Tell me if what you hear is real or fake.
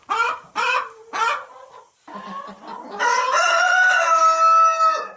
real